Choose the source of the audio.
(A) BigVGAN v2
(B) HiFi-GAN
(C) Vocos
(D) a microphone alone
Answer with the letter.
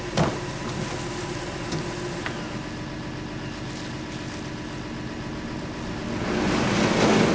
D